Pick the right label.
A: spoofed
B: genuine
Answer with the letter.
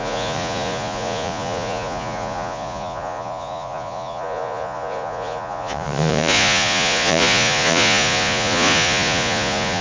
A